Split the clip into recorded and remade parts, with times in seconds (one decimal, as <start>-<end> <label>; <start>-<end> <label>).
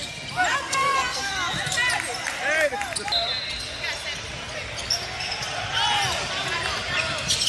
0.0-0.5 recorded; 0.5-1.3 remade; 1.3-7.5 recorded